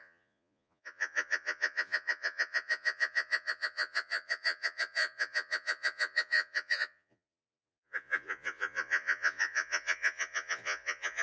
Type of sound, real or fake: fake